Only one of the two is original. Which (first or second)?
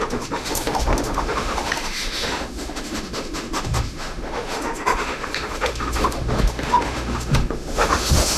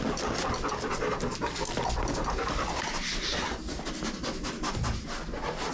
second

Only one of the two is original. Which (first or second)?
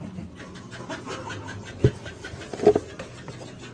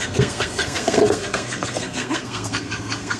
first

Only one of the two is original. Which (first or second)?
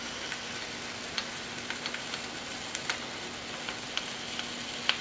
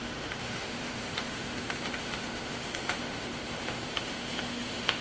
first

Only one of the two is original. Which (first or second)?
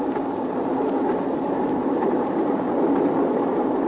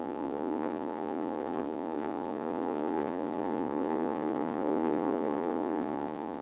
first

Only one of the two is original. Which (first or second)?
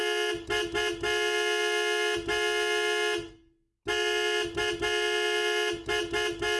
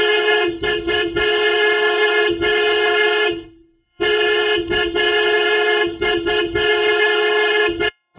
first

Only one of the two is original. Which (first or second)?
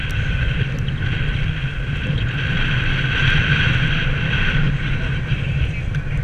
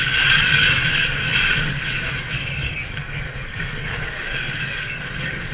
first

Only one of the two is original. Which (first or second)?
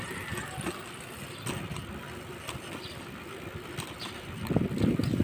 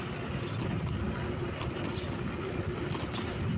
second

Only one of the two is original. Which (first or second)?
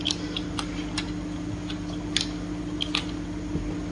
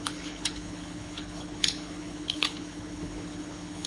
first